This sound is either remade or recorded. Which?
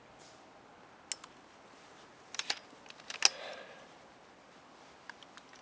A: recorded